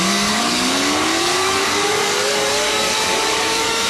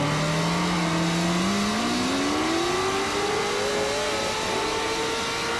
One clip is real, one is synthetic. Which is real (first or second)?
second